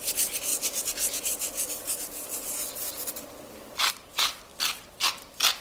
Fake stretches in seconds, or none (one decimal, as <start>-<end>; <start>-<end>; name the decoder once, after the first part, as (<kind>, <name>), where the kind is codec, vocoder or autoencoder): 4.5-5.6 (vocoder, BigVGAN v2)

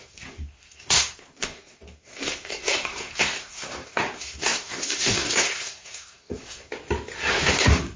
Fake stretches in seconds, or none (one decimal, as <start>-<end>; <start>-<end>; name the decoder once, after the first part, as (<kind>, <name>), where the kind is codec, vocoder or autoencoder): 0.0-6.7 (codec, SNAC); 7.3-8.0

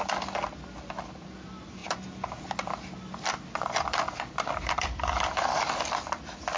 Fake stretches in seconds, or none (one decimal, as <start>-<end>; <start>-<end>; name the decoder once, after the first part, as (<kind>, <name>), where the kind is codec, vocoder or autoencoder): none